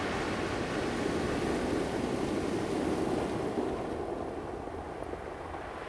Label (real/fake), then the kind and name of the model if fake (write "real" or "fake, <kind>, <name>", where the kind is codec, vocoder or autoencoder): real